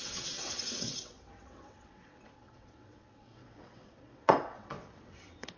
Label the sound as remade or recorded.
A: remade